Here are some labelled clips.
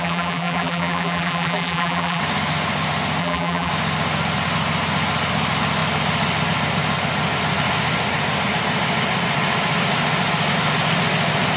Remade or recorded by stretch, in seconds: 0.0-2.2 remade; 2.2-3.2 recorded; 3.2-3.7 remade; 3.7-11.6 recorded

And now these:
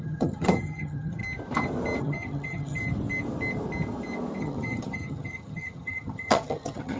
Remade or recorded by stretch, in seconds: 0.0-1.2 remade; 1.2-2.0 recorded; 2.0-2.8 remade; 2.8-4.4 recorded; 4.4-7.0 remade

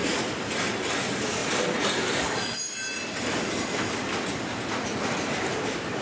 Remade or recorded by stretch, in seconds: 0.0-1.4 recorded; 1.4-2.6 remade; 2.6-6.0 recorded

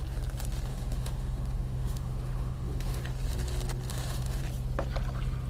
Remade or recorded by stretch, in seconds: 0.0-0.7 recorded; 0.7-3.0 remade; 3.0-3.9 recorded; 3.9-4.4 remade; 4.4-5.5 recorded

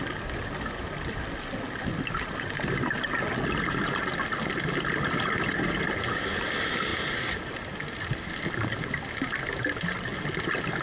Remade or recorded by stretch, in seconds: 0.0-10.8 recorded

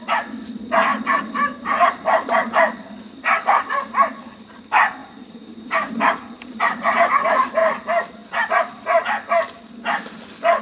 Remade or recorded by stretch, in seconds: 0.0-0.9 recorded; 0.9-1.9 remade; 1.9-5.0 recorded; 5.0-6.6 remade; 6.6-10.6 recorded